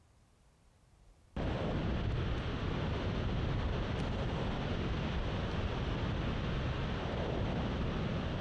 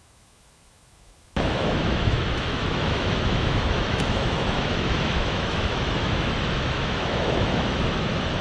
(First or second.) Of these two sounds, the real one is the first